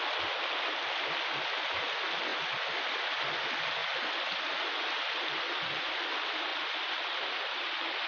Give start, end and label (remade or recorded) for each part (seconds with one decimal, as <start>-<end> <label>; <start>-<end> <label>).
0.0-8.1 recorded